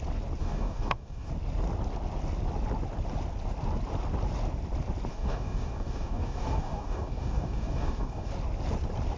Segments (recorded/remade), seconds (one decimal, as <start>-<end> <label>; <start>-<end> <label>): 0.0-0.4 recorded; 0.4-1.3 remade; 1.3-5.1 recorded; 5.1-8.3 remade; 8.3-9.2 recorded

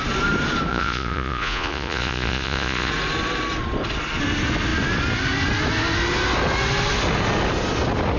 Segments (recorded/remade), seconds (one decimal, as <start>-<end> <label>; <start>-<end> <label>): 0.0-0.7 recorded; 0.7-2.9 remade; 2.9-8.2 recorded

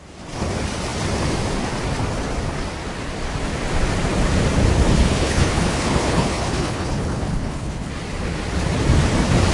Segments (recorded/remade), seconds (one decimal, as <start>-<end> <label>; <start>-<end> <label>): 0.0-5.0 recorded; 5.0-7.9 remade; 7.9-9.5 recorded

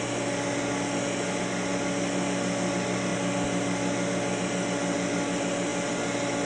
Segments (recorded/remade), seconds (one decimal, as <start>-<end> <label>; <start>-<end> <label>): 0.0-6.5 recorded

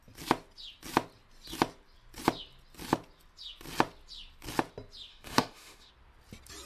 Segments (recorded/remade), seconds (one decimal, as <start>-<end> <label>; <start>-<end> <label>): 0.0-5.1 recorded; 5.1-5.9 remade; 5.9-6.7 recorded

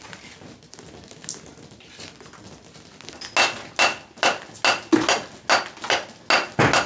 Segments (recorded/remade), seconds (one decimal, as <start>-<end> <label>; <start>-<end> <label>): 0.0-6.9 recorded